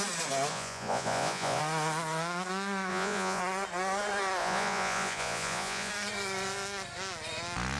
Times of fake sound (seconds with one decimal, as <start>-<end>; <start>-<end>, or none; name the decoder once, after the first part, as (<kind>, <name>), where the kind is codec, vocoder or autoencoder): 0.5-1.6 (vocoder, Vocos); 2.9-3.4; 4.4-5.9